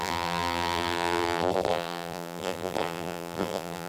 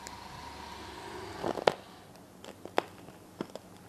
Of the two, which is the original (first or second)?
second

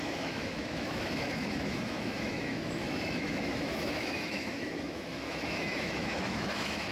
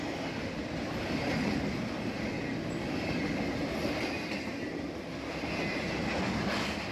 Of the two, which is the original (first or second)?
second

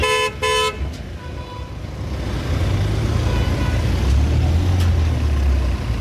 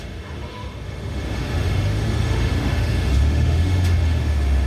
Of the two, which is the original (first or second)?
first